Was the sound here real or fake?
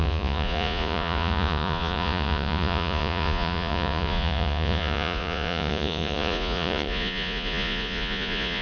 fake